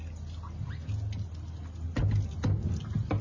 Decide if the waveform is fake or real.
real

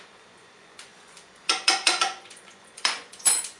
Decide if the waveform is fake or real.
fake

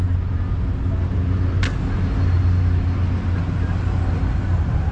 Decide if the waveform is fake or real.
real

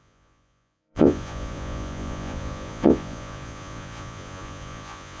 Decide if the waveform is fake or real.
fake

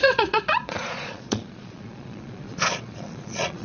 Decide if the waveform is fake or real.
fake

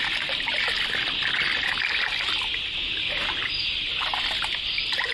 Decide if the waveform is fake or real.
real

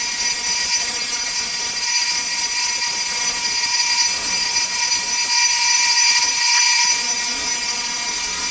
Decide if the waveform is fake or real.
fake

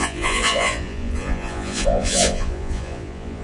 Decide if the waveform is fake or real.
fake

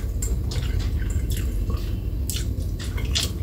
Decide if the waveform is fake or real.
real